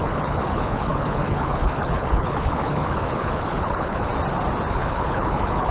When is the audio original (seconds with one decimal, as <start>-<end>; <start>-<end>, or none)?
4.1-4.7

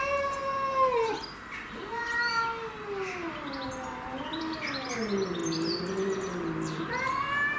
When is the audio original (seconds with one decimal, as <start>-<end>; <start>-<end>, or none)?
0.0-7.6

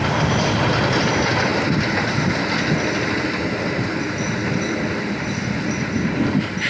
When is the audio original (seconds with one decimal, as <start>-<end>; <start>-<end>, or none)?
0.0-6.7

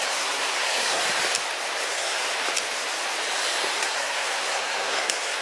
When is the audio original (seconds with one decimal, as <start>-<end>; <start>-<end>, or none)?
1.0-1.8; 2.2-3.7

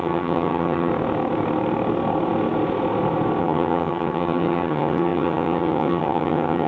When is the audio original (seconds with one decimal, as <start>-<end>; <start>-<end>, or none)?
0.9-3.4

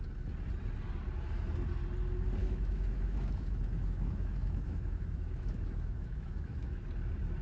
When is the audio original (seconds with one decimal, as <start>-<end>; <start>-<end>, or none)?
0.0-2.4; 6.8-7.4

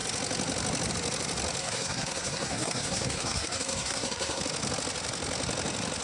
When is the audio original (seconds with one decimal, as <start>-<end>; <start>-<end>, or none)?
0.0-1.6; 4.4-6.0